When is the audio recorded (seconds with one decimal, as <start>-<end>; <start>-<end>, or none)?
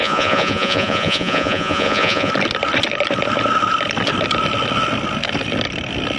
2.3-6.2